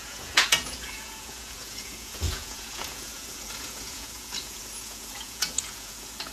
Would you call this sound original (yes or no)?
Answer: no